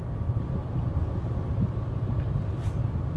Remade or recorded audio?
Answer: recorded